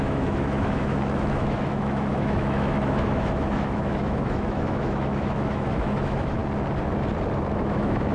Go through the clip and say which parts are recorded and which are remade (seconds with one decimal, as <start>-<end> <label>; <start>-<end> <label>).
0.0-6.4 remade; 6.4-7.5 recorded; 7.5-8.1 remade